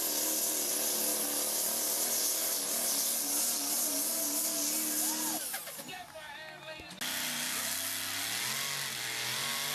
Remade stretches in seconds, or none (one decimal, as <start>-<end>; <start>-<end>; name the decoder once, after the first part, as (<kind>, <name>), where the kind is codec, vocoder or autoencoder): none